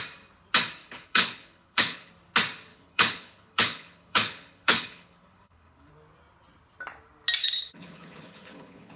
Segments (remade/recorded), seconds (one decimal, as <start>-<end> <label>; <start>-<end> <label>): 0.0-0.8 recorded; 0.8-2.1 remade; 2.1-2.7 recorded; 2.7-5.9 remade; 5.9-7.4 recorded; 7.4-9.0 remade